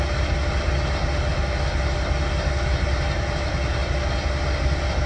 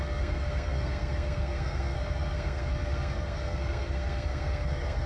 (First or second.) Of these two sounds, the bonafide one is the first